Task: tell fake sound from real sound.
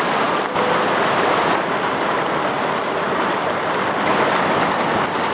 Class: real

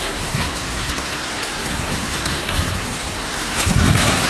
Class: fake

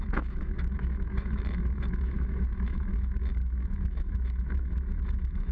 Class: fake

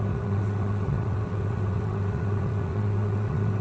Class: fake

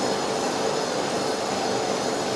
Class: real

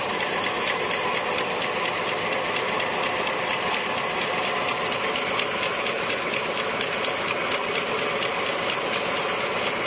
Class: real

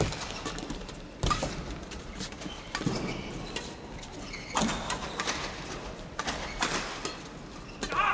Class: real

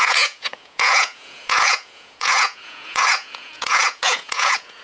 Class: fake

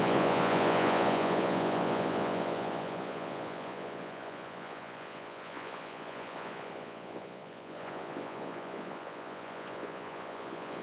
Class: fake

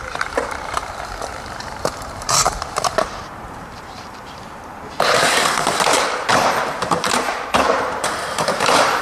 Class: fake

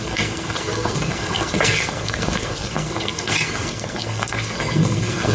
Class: fake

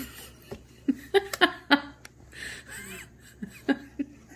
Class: real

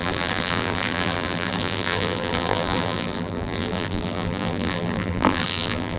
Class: fake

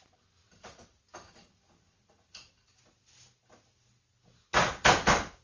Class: real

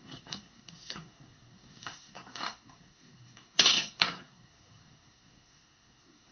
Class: fake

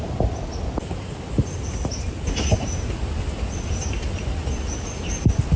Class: real